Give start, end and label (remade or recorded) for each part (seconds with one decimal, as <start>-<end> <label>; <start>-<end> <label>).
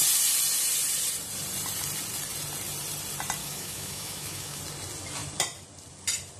0.0-3.4 recorded; 3.4-4.6 remade; 4.6-6.4 recorded